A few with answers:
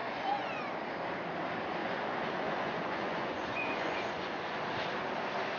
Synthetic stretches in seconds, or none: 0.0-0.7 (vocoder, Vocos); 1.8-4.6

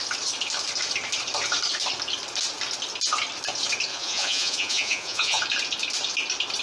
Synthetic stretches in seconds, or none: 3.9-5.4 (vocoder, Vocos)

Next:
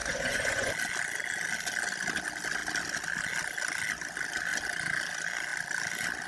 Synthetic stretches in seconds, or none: 0.0-0.7 (vocoder, Vocos)

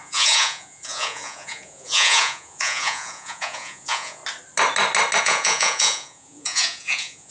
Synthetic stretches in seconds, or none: 0.0-4.2 (vocoder, Vocos); 5.2-7.3

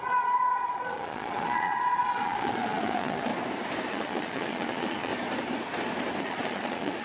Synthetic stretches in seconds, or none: 0.0-3.3 (vocoder, Vocos); 3.9-5.1; 6.2-7.0

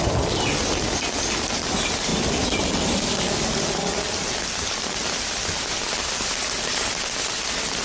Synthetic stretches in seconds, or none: none

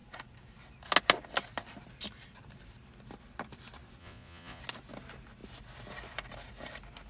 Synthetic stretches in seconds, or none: 4.0-4.6 (vocoder, Vocos)